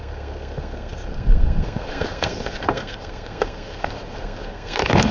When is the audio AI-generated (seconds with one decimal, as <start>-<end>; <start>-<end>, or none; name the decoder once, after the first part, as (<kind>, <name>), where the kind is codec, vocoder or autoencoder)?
0.0-5.1 (codec, SNAC)